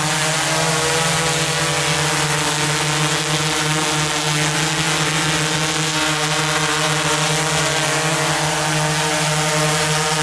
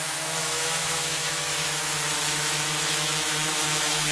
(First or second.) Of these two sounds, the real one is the first